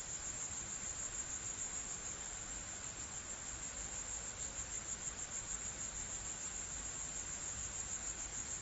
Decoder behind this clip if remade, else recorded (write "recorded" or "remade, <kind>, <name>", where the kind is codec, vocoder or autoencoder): remade, vocoder, BigVGAN v2